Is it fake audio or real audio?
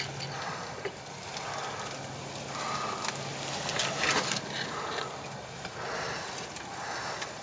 real